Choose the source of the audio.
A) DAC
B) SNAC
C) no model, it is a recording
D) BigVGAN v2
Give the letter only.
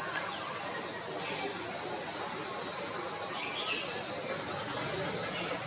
C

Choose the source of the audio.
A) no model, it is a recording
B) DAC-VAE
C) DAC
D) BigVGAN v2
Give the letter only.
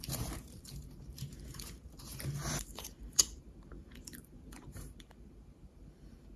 D